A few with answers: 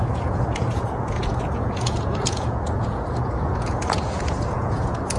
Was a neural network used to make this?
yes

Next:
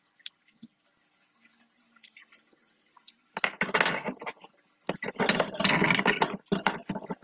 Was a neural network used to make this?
no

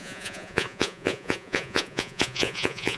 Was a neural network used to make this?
yes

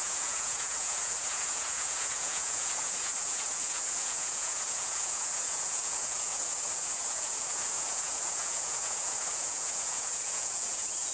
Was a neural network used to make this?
yes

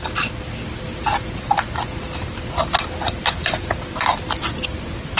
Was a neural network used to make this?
no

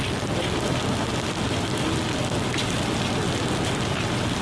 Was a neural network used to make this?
no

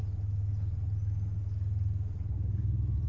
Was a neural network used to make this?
no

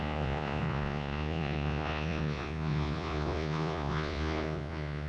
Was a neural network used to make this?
yes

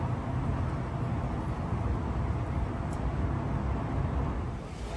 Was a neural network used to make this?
no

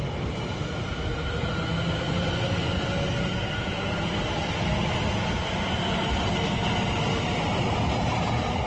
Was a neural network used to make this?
no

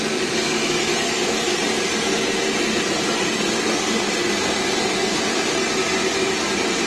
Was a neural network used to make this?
no